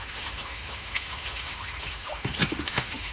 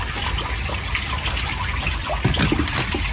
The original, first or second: second